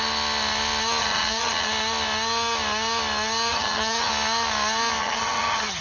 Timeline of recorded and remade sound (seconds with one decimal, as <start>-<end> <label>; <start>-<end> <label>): 0.0-1.0 recorded; 1.0-1.7 remade; 1.7-3.5 recorded; 3.5-4.1 remade; 4.1-5.0 recorded; 5.0-5.8 remade